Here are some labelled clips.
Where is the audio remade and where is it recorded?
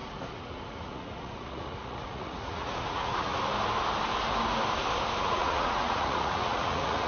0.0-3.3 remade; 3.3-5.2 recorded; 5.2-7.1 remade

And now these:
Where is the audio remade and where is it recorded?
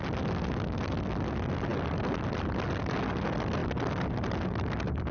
0.0-5.1 recorded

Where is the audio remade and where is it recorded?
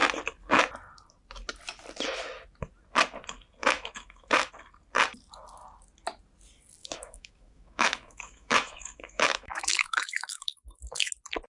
0.0-3.6 recorded; 3.6-4.5 remade; 4.5-6.8 recorded; 6.8-11.1 remade; 11.1-11.6 recorded